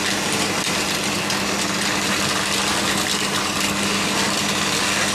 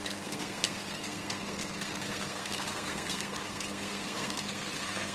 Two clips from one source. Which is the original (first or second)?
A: first